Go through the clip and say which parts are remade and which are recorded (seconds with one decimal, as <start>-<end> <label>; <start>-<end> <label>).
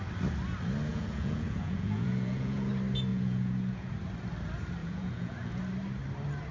0.0-0.9 recorded; 0.9-2.7 remade; 2.7-3.1 recorded; 3.1-3.9 remade; 3.9-4.8 recorded; 4.8-5.6 remade; 5.6-6.5 recorded